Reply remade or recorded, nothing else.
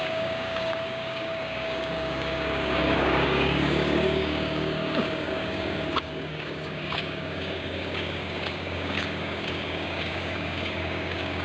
remade